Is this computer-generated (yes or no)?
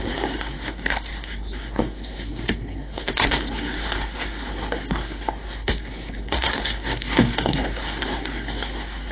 yes